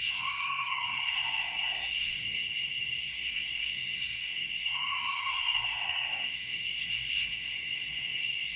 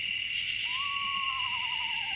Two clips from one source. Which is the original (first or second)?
second